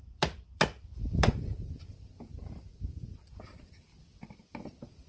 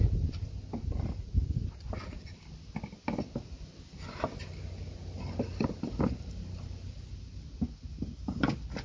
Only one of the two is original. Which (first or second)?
second